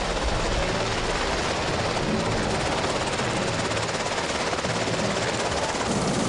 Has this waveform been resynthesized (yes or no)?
no